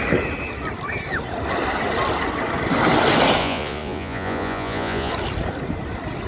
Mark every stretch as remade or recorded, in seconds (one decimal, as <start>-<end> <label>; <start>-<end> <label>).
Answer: 0.0-3.4 recorded; 3.4-5.1 remade; 5.1-6.3 recorded